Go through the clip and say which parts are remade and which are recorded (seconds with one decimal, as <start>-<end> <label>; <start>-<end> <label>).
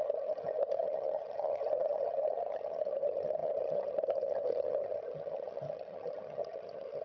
0.0-7.0 remade